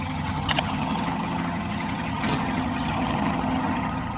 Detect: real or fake fake